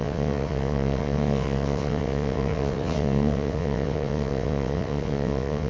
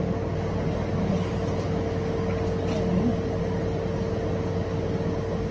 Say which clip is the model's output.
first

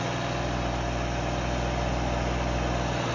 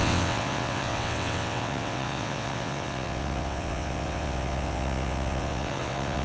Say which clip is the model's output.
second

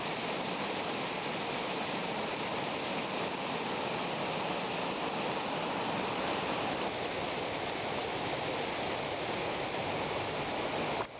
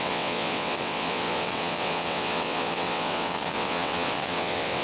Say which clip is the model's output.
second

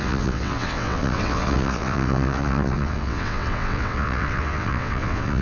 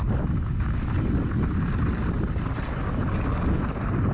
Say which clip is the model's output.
first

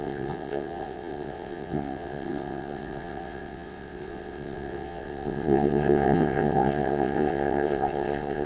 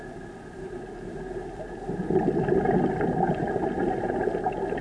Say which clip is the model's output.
first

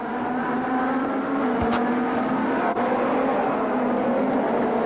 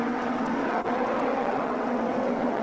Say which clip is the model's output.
second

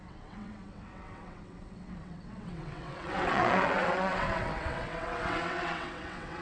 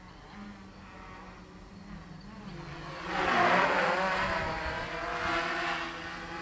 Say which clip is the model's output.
first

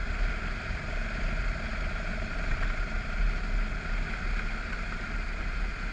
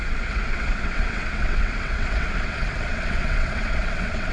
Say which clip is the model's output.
second